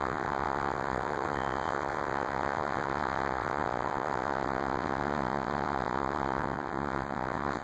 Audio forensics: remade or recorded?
remade